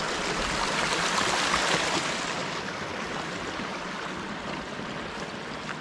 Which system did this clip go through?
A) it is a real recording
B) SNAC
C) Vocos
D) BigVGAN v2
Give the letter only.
A